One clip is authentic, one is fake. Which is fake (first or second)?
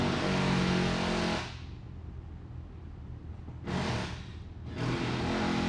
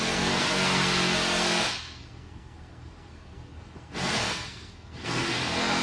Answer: second